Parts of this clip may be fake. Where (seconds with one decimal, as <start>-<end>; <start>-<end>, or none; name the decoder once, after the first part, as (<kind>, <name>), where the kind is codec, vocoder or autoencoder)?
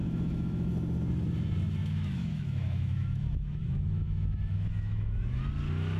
0.0-0.7 (autoencoder, DAC-VAE); 1.8-5.4